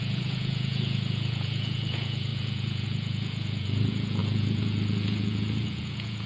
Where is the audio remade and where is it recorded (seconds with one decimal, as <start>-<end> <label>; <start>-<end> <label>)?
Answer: 0.0-6.3 remade